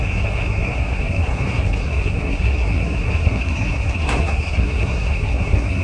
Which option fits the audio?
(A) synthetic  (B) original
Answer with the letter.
A